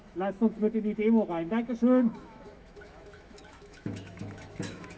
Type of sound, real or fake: fake